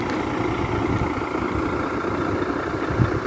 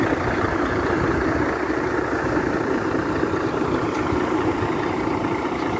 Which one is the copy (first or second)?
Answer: second